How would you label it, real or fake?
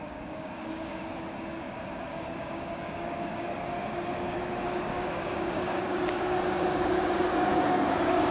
fake